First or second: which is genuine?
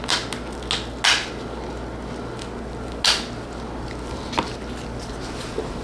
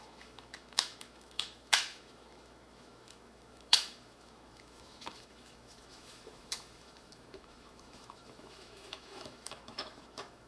first